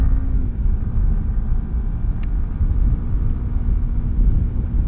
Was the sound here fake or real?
real